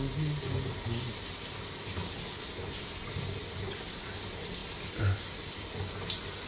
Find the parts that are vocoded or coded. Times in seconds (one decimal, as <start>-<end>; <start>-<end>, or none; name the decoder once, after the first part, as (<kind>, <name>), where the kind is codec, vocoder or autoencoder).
none